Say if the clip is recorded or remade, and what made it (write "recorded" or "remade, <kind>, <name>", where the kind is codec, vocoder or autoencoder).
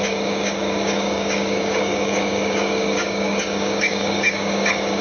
remade, codec, DAC